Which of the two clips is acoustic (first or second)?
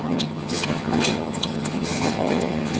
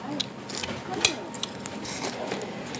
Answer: second